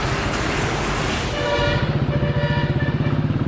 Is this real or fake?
real